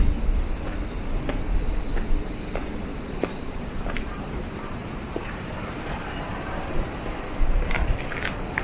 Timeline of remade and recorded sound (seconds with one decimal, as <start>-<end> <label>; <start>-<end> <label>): 0.0-2.9 recorded; 2.9-8.0 remade; 8.0-8.6 recorded